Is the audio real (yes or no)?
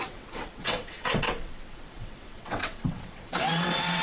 no